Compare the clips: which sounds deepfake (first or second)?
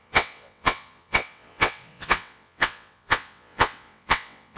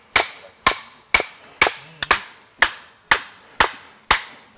first